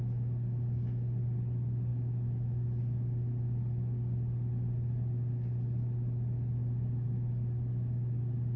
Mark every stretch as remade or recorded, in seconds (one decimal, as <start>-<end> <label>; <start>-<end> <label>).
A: 0.0-1.9 recorded; 1.9-2.8 remade; 2.8-8.6 recorded